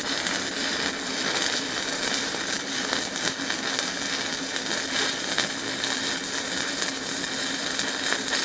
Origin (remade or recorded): recorded